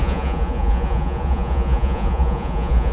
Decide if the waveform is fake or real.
fake